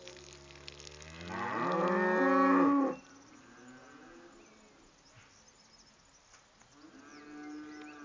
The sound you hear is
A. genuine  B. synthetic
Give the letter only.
A